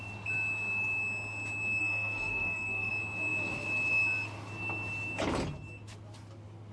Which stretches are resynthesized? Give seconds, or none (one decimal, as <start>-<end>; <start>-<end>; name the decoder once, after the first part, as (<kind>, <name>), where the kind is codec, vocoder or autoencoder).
1.8-2.9 (codec, SNAC)

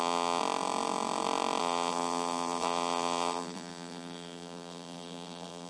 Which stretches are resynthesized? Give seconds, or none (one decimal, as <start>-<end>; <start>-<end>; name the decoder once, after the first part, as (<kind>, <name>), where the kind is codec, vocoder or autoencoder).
0.0-0.4 (vocoder, BigVGAN v2); 1.6-5.7

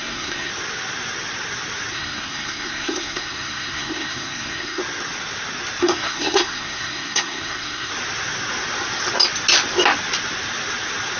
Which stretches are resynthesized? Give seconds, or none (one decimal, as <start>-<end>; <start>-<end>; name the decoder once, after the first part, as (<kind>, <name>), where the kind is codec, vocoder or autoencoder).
0.0-0.5 (codec, SNAC); 1.9-4.8; 5.8-7.9

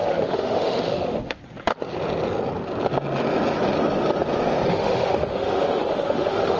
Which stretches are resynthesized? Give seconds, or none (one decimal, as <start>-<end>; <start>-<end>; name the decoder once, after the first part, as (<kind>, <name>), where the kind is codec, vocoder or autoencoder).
0.0-1.4 (autoencoder, DAC-VAE); 4.7-6.6

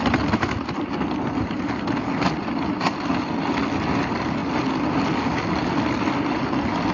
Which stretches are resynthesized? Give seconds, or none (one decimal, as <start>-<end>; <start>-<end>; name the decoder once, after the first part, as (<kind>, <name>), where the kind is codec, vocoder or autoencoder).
none

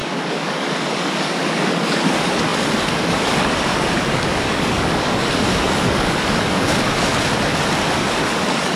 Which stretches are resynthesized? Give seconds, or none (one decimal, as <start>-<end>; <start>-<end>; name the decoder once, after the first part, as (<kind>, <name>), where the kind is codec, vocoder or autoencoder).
0.0-7.1 (codec, DAC); 7.9-8.8